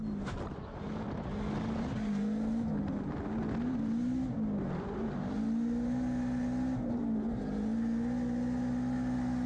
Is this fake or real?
real